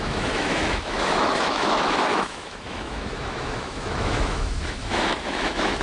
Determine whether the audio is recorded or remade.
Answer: remade